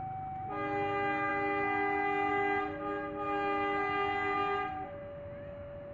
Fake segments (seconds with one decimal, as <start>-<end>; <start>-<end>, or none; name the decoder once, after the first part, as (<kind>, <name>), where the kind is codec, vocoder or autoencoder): none